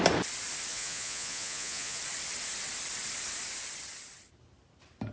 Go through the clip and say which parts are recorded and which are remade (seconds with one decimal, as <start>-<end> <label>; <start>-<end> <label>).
0.0-0.7 recorded; 0.7-2.0 remade; 2.0-5.1 recorded